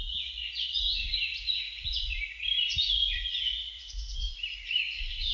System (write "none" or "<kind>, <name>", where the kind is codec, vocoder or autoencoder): vocoder, Vocos